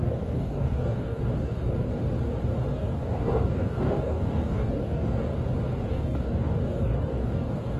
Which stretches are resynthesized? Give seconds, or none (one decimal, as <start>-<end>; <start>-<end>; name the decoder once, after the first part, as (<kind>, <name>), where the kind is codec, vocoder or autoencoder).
0.0-1.9 (codec, DAC); 2.7-5.3; 5.9-7.8